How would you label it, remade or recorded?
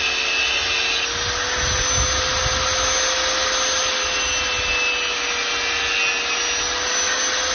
recorded